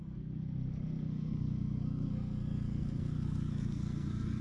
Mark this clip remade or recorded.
remade